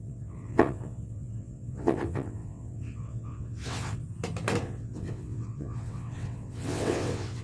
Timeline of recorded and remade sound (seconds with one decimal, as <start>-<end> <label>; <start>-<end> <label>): 0.0-4.0 remade; 4.0-4.6 recorded; 4.6-7.4 remade